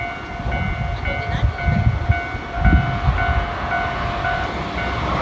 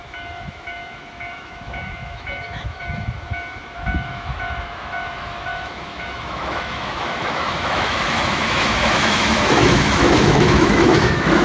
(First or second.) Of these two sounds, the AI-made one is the second